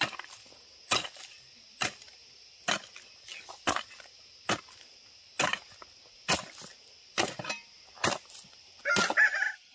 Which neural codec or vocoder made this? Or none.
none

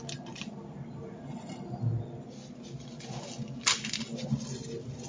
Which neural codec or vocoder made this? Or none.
none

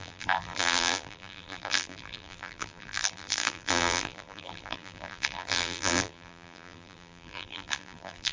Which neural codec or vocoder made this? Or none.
vocoder, BigVGAN v2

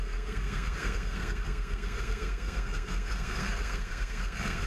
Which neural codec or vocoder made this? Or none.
codec, SNAC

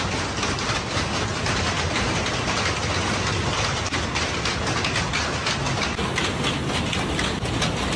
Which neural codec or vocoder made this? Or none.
none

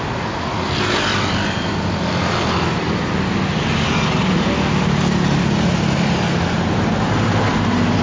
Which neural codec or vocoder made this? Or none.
none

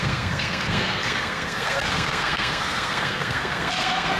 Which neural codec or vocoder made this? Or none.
codec, SNAC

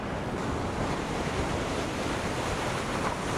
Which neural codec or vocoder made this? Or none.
vocoder, BigVGAN v2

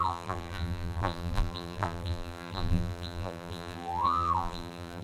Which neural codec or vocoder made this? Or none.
vocoder, BigVGAN v2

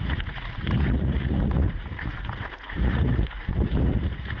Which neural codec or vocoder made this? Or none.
vocoder, Vocos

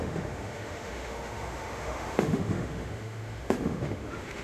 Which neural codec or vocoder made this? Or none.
autoencoder, DAC-VAE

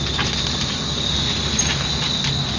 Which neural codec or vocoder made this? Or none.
none